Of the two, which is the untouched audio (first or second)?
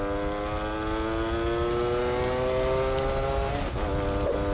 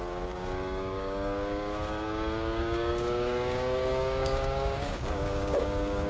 first